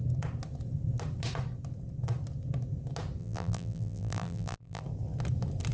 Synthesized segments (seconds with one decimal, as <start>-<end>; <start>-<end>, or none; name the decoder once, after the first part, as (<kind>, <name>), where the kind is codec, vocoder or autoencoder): 3.2-4.8 (vocoder, BigVGAN v2)